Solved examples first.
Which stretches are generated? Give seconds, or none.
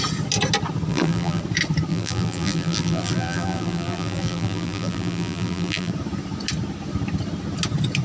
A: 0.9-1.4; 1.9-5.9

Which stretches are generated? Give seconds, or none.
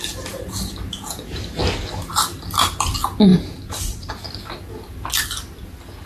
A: 2.1-2.9; 3.3-4.1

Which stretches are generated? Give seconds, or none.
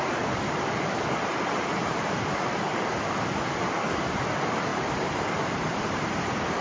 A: 1.8-4.2; 4.7-6.6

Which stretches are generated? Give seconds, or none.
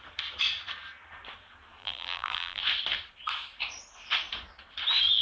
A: 1.8-2.6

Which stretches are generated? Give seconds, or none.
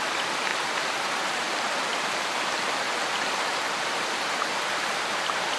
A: 0.5-1.6